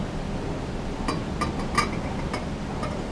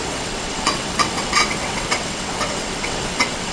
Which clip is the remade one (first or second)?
second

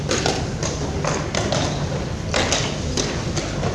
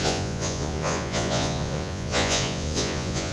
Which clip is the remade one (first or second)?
second